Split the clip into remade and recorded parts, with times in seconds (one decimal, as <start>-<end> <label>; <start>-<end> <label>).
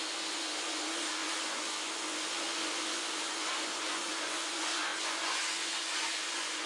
0.0-6.7 remade